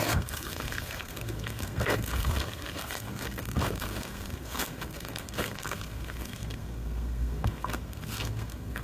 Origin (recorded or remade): remade